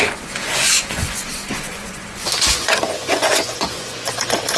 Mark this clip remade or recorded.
remade